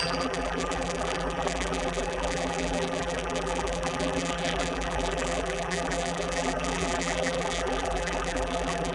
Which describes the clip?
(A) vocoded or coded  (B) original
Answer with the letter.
A